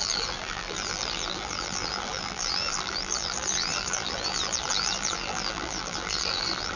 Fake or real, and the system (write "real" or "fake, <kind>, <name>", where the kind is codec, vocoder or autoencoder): fake, vocoder, BigVGAN v2